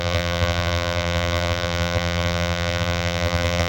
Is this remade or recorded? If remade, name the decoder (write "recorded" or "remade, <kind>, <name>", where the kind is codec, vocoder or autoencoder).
remade, vocoder, BigVGAN v2